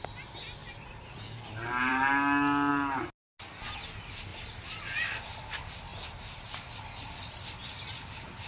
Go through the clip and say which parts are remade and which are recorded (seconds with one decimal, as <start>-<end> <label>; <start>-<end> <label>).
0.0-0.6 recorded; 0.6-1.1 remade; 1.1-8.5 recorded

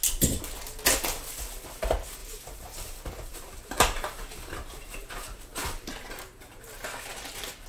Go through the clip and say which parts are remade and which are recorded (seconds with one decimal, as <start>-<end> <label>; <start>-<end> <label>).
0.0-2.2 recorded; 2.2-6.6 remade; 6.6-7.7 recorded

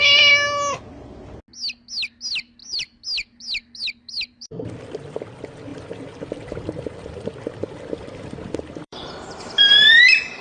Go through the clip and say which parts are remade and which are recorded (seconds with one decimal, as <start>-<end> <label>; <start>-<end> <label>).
0.0-2.6 recorded; 2.6-4.5 remade; 4.5-5.7 recorded; 5.7-10.0 remade; 10.0-10.4 recorded

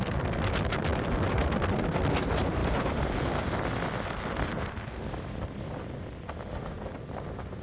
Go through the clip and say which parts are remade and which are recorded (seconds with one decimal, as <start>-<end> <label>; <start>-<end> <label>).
0.0-2.6 recorded; 2.6-3.2 remade; 3.2-7.6 recorded